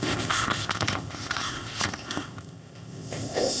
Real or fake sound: fake